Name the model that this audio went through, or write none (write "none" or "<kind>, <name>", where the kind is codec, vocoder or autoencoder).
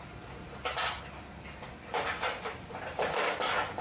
none